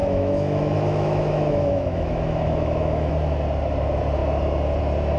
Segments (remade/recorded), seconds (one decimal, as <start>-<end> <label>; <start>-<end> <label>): 0.0-3.1 remade; 3.1-5.2 recorded